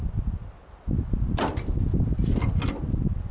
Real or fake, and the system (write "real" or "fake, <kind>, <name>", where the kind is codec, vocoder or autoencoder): real